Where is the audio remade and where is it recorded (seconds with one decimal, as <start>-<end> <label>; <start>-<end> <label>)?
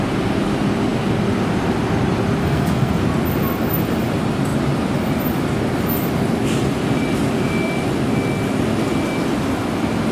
0.0-2.4 recorded; 2.4-3.0 remade; 3.0-10.1 recorded